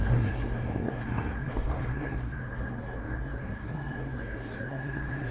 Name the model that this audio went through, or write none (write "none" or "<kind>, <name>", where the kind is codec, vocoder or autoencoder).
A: codec, SNAC